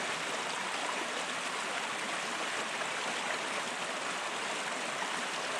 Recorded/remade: recorded